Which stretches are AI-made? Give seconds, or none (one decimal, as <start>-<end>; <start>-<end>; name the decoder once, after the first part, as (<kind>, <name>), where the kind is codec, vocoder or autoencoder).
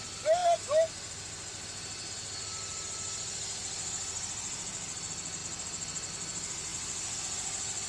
none